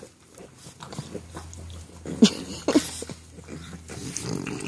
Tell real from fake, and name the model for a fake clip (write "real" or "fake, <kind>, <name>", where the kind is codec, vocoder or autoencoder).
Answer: real